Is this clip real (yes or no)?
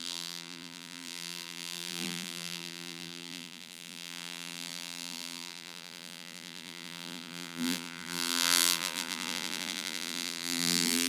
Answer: no